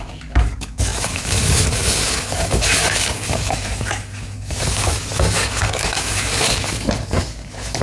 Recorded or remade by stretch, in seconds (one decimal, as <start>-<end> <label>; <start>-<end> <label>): 0.0-7.8 remade

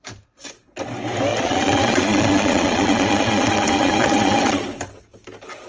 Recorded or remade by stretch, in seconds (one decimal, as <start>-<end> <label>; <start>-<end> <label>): 0.0-1.3 recorded; 1.3-4.6 remade; 4.6-5.7 recorded

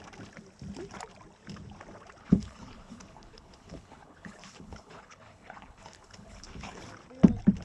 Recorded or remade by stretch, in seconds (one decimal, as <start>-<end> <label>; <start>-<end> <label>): 0.0-2.2 recorded; 2.2-6.8 remade; 6.8-7.6 recorded

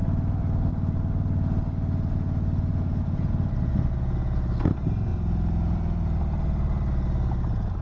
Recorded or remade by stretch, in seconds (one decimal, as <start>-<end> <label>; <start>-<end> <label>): 0.0-2.7 recorded; 2.7-3.3 remade; 3.3-5.1 recorded; 5.1-6.2 remade; 6.2-7.8 recorded

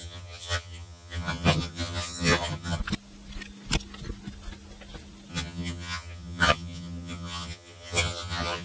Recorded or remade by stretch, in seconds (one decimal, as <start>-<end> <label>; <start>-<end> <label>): 0.0-2.8 remade; 2.8-5.3 recorded; 5.3-8.6 remade

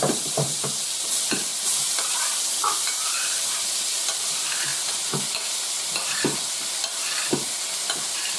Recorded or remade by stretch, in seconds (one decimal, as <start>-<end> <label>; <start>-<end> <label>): 0.0-1.5 remade; 1.5-3.9 recorded; 3.9-4.7 remade; 4.7-5.3 recorded; 5.3-8.4 remade

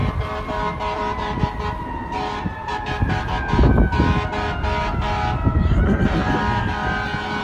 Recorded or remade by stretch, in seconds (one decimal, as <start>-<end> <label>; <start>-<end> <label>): 0.0-7.4 recorded